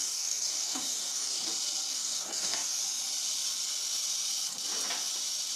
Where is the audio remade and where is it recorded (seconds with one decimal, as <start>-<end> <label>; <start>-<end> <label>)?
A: 0.0-1.5 remade; 1.5-1.9 recorded; 1.9-2.8 remade; 2.8-5.6 recorded